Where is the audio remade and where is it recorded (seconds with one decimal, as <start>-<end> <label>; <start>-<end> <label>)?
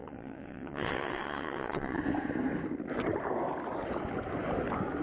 0.0-2.0 remade; 2.0-5.0 recorded